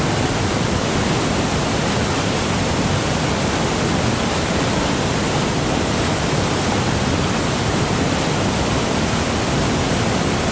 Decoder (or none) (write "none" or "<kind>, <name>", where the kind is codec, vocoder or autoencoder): none